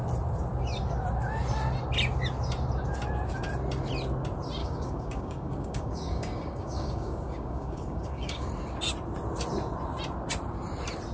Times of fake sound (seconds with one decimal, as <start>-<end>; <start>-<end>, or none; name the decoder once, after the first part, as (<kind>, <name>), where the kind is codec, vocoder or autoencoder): 4.6-8.5 (codec, DAC)